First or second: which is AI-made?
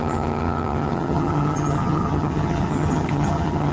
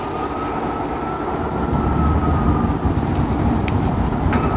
first